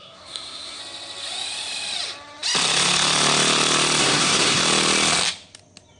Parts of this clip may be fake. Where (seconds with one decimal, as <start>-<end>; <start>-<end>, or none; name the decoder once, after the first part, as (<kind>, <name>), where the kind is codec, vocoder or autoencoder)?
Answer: 0.0-0.8 (codec, SNAC); 4.0-4.6